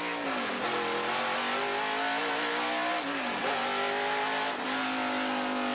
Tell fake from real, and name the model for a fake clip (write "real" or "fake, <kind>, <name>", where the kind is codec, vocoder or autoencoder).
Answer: real